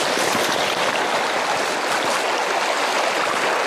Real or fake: real